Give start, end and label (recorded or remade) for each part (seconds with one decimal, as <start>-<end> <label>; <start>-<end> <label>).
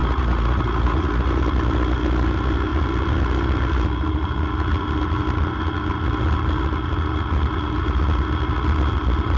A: 0.0-1.4 remade; 1.4-9.4 recorded